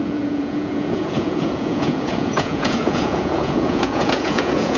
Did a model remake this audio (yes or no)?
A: yes